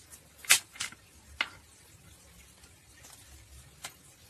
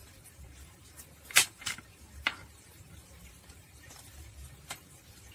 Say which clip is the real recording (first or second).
first